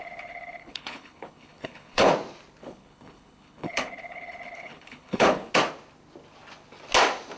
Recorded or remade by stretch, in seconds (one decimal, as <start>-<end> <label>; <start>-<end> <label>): 0.0-2.1 remade; 2.1-2.6 recorded; 2.6-5.5 remade; 5.5-7.4 recorded